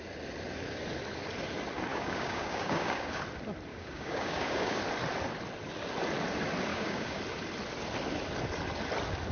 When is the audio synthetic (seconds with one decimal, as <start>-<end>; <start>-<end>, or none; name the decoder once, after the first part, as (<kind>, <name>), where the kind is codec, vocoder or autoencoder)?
1.9-3.2 (codec, DAC); 3.7-4.8; 6.7-7.2